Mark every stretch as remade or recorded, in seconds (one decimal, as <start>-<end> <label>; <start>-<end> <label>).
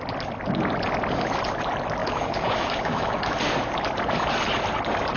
0.0-2.0 recorded; 2.0-3.4 remade; 3.4-5.2 recorded